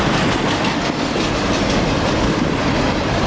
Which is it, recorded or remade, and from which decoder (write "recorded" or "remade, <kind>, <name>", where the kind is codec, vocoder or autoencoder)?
recorded